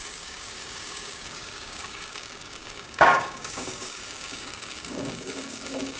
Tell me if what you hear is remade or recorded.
remade